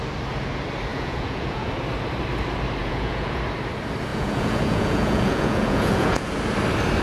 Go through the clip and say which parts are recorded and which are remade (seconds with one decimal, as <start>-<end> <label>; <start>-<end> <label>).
0.0-0.9 recorded; 0.9-1.7 remade; 1.7-2.8 recorded; 2.8-3.4 remade; 3.4-4.1 recorded; 4.1-6.3 remade; 6.3-7.0 recorded